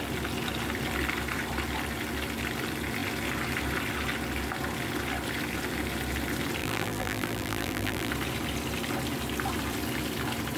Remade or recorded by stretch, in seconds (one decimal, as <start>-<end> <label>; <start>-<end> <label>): 0.0-6.6 recorded; 6.6-8.1 remade; 8.1-10.6 recorded